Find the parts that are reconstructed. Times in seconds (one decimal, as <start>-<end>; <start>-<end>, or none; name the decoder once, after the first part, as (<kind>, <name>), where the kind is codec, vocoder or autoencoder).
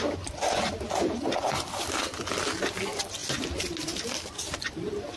none